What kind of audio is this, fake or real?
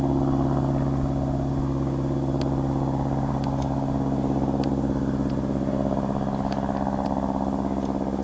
real